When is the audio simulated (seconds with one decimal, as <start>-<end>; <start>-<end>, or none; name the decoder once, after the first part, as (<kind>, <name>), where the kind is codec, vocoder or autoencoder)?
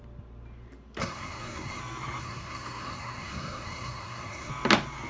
1.0-1.8 (codec, SNAC); 2.2-4.5